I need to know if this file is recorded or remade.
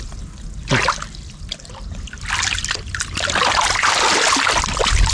recorded